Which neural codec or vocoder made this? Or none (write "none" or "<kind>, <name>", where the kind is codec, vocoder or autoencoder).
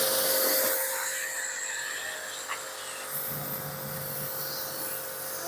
none